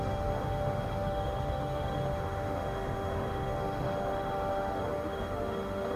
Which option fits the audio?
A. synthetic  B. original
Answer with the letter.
A